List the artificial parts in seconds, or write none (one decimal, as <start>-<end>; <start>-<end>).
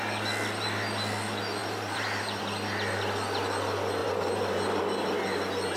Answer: 1.6-2.4; 4.0-4.8